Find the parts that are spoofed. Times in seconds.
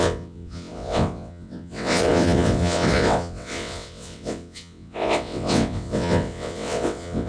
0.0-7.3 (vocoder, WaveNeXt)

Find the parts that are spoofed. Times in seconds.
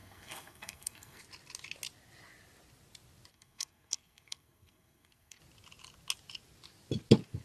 0.0-1.2 (codec, SNAC); 3.3-5.4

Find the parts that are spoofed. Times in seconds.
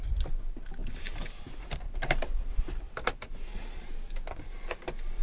0.8-3.9 (vocoder, BigVGAN v2)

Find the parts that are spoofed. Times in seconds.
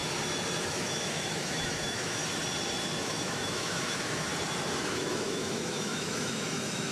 0.6-2.2 (autoencoder, DAC-VAE); 3.0-4.3; 4.8-6.9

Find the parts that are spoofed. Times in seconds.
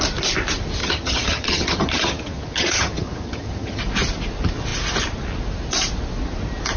0.8-3.8 (vocoder, HiFi-GAN)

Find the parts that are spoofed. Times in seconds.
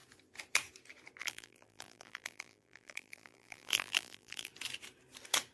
1.2-4.5 (vocoder, BigVGAN v2)